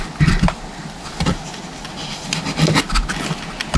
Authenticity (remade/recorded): recorded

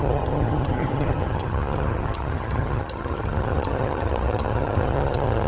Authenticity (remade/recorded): remade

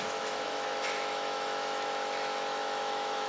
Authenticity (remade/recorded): remade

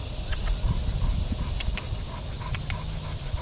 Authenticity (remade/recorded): recorded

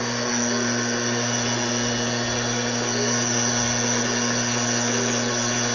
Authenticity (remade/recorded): recorded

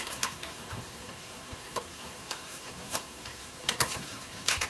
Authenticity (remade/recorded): remade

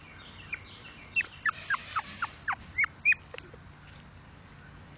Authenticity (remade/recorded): recorded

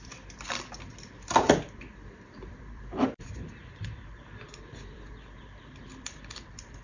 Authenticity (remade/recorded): remade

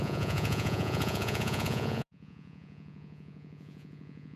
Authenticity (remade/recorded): remade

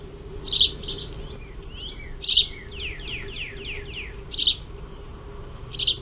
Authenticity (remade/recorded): recorded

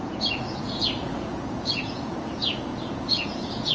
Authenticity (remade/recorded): remade